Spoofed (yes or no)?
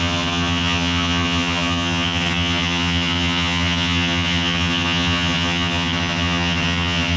yes